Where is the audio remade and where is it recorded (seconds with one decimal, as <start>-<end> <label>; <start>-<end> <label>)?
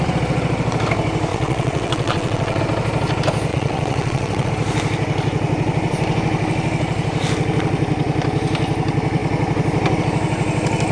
0.0-1.3 recorded; 1.3-2.6 remade; 2.6-3.5 recorded; 3.5-4.5 remade; 4.5-10.9 recorded